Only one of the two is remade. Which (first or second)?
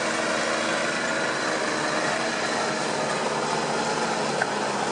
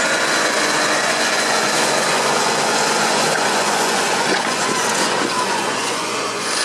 second